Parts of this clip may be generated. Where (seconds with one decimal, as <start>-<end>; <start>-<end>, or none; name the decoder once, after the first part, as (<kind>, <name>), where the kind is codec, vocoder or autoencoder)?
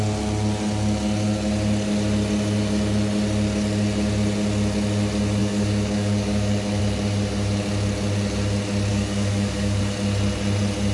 5.4-6.8 (codec, DAC); 8.9-9.8